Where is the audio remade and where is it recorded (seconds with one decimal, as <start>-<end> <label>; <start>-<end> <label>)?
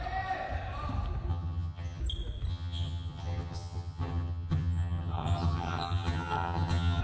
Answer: 0.0-1.3 recorded; 1.3-2.0 remade; 2.0-2.5 recorded; 2.5-7.0 remade